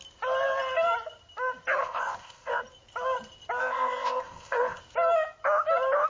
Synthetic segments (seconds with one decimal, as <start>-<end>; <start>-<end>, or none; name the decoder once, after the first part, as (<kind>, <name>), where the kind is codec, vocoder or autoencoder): 1.8-2.6 (codec, ZipCodec); 3.6-4.8